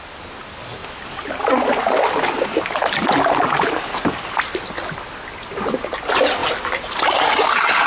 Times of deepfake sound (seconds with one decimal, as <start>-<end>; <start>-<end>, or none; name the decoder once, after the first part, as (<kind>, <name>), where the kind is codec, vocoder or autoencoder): none